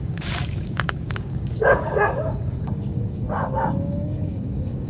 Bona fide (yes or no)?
no